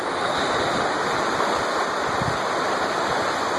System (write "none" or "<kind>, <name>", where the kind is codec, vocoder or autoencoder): none